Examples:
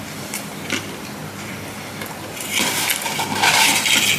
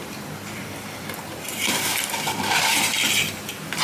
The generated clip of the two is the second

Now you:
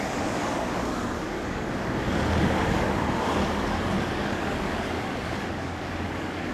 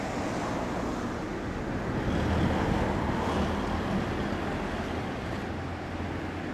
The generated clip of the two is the first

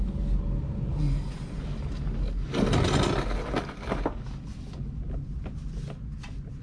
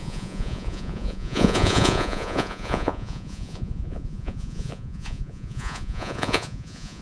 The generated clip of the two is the second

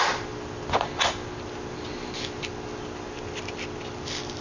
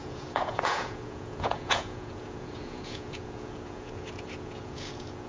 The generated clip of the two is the second